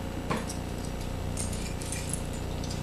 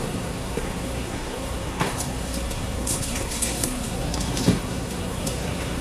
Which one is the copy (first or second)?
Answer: second